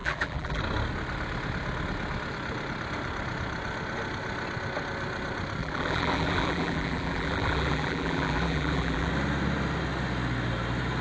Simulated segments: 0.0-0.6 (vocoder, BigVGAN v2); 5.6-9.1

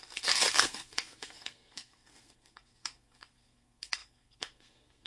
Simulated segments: 0.0-5.1 (codec, SNAC)